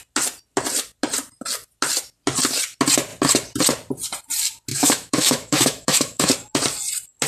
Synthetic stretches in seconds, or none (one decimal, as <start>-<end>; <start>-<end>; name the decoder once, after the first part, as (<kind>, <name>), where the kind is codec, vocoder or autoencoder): 4.7-6.3 (autoencoder, DAC-VAE)